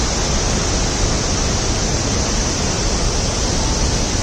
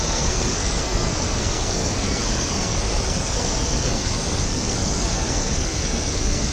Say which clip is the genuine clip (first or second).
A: first